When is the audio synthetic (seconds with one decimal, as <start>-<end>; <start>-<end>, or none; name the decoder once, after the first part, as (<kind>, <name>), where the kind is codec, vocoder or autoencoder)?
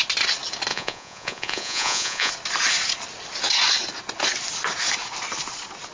0.7-2.3 (vocoder, Vocos)